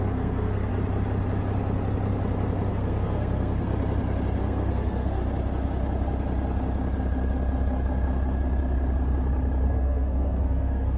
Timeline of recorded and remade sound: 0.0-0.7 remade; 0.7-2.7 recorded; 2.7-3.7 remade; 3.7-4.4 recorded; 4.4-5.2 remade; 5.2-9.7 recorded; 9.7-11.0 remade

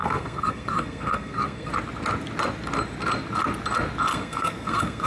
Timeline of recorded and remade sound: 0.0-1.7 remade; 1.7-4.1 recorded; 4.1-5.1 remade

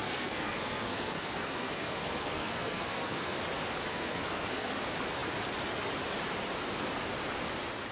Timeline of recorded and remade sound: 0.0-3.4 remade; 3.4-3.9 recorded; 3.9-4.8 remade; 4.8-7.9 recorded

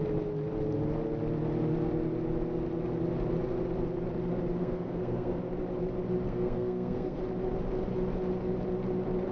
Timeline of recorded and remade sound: 0.0-4.6 recorded; 4.6-5.4 remade; 5.4-6.3 recorded; 6.3-7.2 remade; 7.2-9.3 recorded

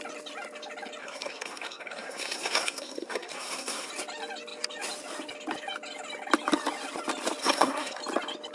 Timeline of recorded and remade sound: 0.0-1.0 recorded; 1.0-3.9 remade; 3.9-7.4 recorded; 7.4-8.0 remade; 8.0-8.5 recorded

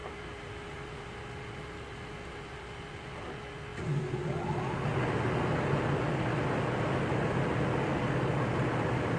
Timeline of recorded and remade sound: 0.0-9.2 recorded

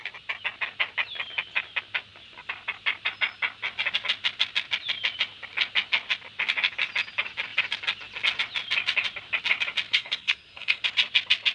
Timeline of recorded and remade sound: 0.0-9.9 recorded; 9.9-10.8 remade; 10.8-11.5 recorded

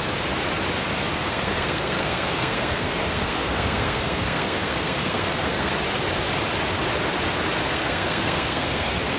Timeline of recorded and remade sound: 0.0-1.1 recorded; 1.1-5.7 remade; 5.7-7.7 recorded; 7.7-9.2 remade